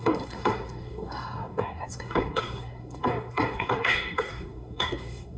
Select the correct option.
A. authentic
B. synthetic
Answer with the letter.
B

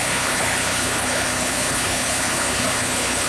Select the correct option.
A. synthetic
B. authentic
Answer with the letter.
A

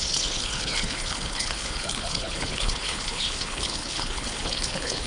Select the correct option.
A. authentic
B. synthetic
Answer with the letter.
B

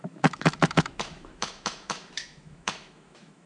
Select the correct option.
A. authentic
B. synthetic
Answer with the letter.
B